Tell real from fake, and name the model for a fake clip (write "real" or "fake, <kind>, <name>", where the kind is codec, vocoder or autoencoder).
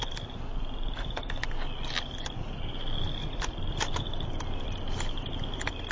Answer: real